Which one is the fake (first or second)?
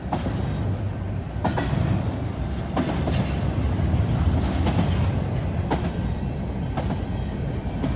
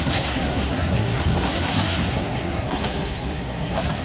second